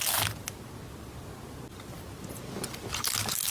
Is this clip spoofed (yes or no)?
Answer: no